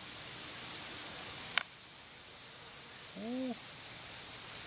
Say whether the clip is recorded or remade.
recorded